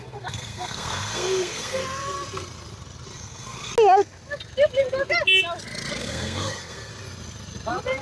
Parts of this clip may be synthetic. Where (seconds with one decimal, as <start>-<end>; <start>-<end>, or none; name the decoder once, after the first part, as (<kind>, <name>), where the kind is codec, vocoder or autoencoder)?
0.0-1.8 (codec, SNAC); 3.2-3.7; 6.0-6.9